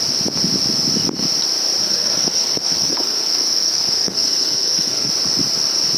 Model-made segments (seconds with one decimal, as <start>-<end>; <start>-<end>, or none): 1.8-5.1